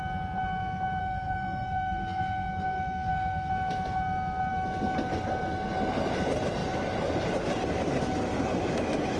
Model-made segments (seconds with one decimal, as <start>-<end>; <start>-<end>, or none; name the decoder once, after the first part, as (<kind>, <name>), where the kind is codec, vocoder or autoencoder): 1.0-3.5 (codec, SNAC)